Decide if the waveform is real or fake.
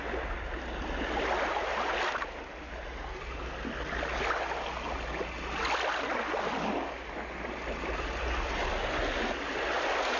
real